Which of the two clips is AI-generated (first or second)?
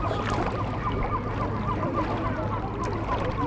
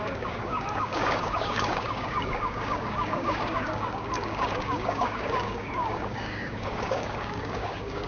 second